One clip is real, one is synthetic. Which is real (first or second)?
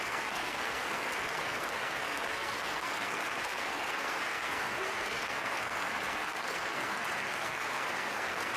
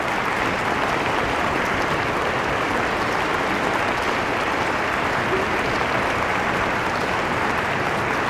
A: second